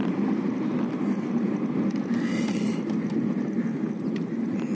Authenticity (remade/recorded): recorded